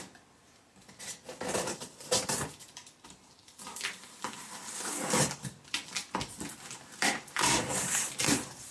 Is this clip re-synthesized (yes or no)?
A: yes